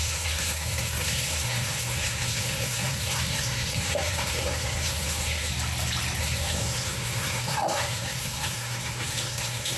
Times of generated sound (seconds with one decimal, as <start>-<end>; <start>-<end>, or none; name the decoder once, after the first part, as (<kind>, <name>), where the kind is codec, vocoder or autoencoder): 0.0-5.5 (codec, SNAC); 6.2-9.8